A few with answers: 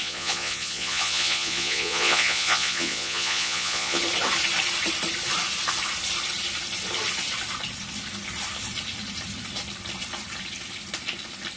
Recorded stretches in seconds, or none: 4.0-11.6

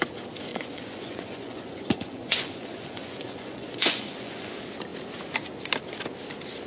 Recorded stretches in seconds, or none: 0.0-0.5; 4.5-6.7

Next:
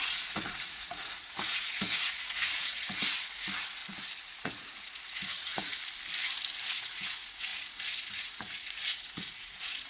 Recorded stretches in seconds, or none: 3.8-4.3; 5.7-6.6

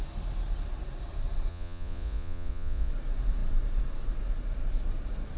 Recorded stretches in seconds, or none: 0.0-1.5; 2.9-5.4

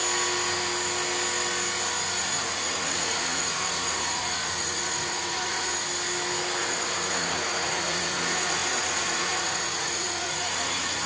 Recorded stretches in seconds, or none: 0.0-2.4; 5.7-6.6

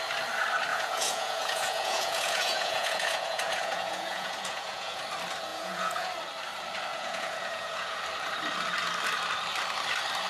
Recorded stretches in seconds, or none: 0.0-0.7; 5.0-5.5; 6.1-6.9; 8.0-10.3

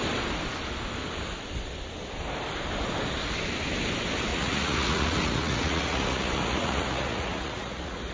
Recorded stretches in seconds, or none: 0.0-4.3